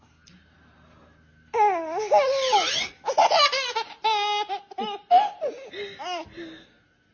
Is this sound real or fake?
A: real